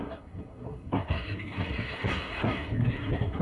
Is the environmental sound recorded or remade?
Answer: remade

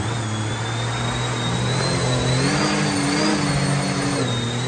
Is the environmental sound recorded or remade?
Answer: recorded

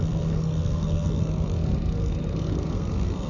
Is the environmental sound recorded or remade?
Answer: remade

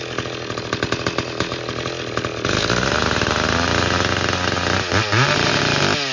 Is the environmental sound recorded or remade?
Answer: recorded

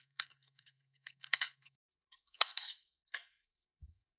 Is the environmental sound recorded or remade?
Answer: remade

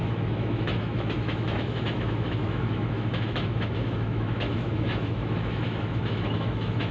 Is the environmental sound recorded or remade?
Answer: remade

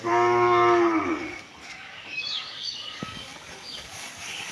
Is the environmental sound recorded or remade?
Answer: remade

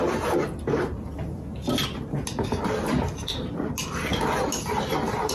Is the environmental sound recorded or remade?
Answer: recorded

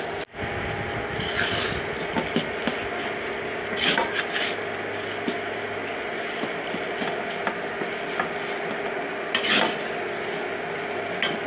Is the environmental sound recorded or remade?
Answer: recorded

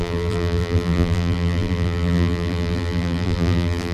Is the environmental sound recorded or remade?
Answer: remade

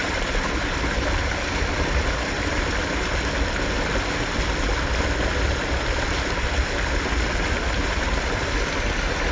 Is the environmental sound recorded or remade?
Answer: recorded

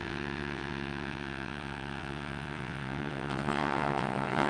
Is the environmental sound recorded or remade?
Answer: remade